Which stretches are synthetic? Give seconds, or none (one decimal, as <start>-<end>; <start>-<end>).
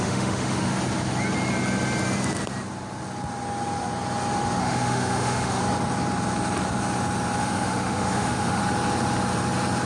0.0-0.7; 4.6-5.6; 7.4-8.6